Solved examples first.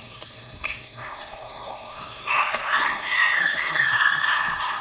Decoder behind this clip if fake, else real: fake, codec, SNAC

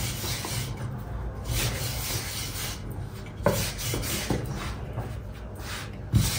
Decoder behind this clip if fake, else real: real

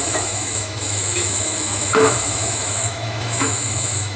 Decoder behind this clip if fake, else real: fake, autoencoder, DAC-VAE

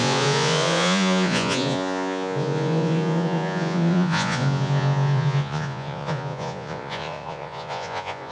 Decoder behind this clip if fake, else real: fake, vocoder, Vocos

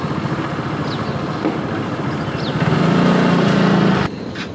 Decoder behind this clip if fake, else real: real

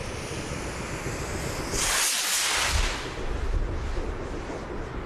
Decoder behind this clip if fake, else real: real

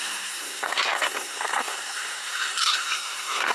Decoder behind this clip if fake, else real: fake, codec, SNAC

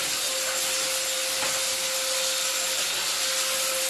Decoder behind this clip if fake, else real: real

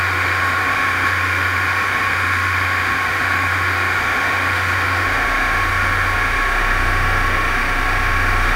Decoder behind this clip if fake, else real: fake, autoencoder, DAC-VAE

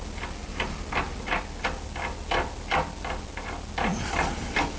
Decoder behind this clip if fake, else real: real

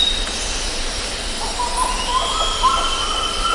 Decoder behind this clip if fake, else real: real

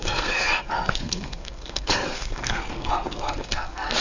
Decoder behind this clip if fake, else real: fake, codec, SNAC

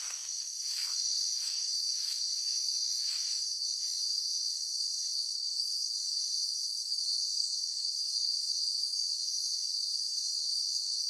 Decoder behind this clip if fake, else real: fake, codec, DAC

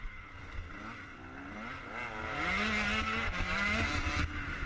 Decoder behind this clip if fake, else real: real